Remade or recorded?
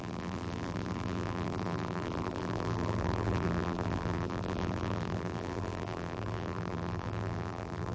remade